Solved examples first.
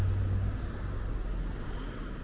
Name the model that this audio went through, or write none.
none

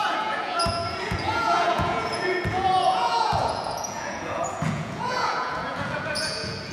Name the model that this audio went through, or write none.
vocoder, Vocos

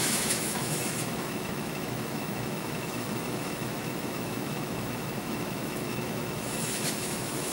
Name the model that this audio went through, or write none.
autoencoder, DAC-VAE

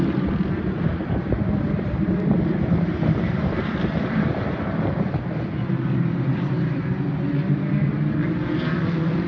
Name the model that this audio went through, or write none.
vocoder, BigVGAN v2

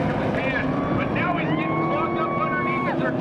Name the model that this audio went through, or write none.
none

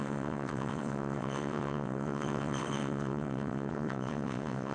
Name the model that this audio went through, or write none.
vocoder, WaveNeXt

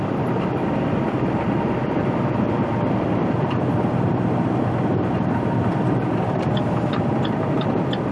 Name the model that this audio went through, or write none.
vocoder, BigVGAN v2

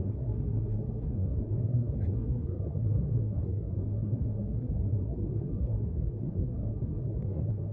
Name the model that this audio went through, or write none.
codec, SNAC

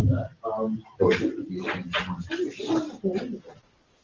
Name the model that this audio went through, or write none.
none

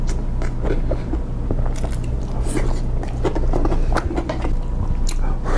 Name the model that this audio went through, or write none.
none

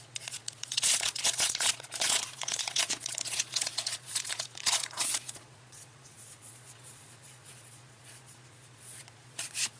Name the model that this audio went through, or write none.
vocoder, Vocos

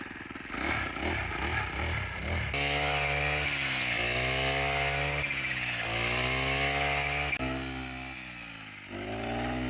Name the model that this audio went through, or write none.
none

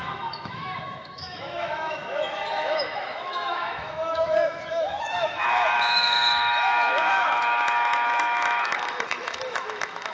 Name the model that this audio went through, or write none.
autoencoder, DAC-VAE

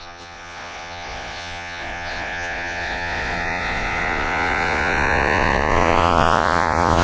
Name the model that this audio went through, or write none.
vocoder, Vocos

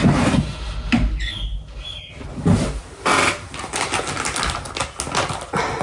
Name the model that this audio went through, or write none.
none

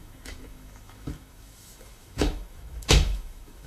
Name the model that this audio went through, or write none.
autoencoder, DAC-VAE